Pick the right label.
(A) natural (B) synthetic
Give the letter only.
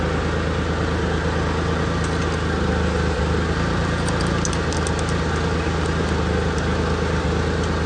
A